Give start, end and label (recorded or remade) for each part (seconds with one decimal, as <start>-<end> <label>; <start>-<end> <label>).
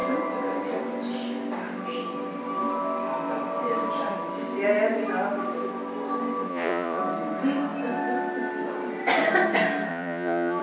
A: 0.0-6.5 recorded; 6.5-7.0 remade; 7.0-9.9 recorded; 9.9-10.6 remade